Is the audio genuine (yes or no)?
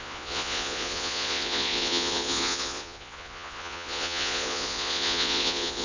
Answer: no